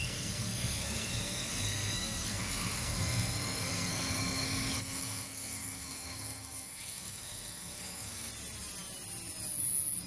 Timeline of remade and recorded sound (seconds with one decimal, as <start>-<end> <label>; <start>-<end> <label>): 0.0-8.3 remade; 8.3-10.1 recorded